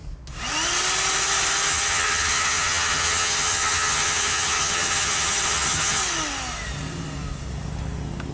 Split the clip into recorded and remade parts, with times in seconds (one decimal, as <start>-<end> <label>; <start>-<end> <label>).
0.0-1.7 recorded; 1.7-6.0 remade; 6.0-8.3 recorded